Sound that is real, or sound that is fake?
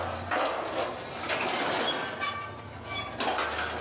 real